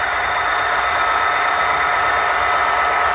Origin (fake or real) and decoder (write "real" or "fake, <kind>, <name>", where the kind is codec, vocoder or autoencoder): real